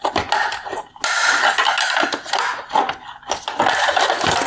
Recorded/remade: recorded